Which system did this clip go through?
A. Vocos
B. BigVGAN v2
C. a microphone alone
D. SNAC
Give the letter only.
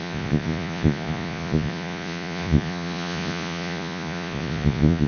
A